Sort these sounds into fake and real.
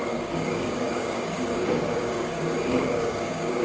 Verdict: fake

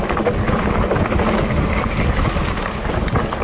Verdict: real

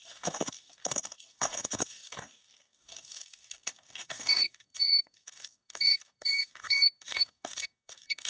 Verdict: fake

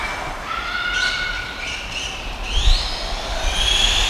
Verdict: real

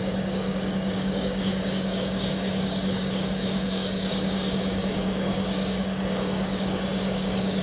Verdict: fake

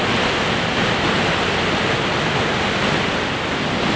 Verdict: real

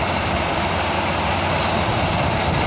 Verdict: real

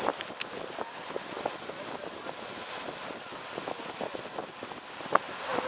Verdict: real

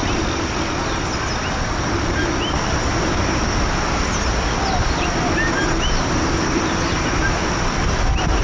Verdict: real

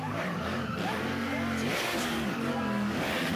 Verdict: fake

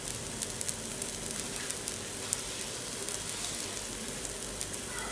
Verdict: real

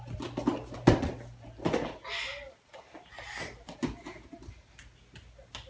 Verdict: real